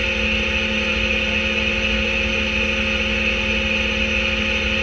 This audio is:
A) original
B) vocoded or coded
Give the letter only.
A